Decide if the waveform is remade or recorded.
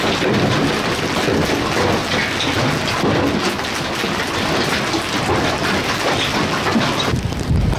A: recorded